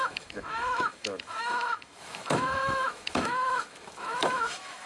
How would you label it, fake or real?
fake